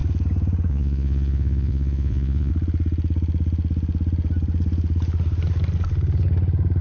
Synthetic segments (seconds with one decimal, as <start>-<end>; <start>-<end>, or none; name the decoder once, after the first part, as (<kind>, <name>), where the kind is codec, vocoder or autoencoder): 0.7-2.5 (vocoder, Vocos)